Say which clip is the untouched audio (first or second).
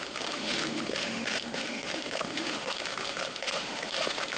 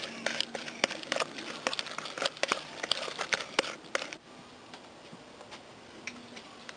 second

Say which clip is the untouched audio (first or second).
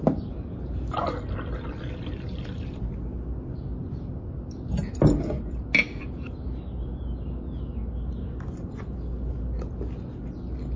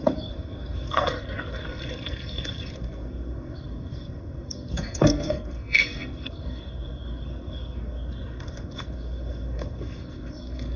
first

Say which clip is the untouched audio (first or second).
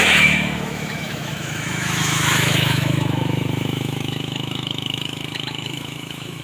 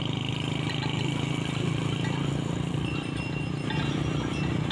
second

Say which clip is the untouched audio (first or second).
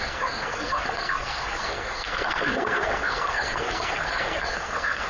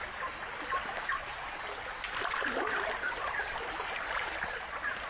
second